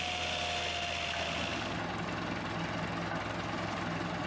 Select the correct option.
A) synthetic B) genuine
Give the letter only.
B